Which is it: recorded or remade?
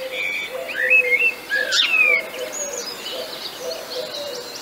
recorded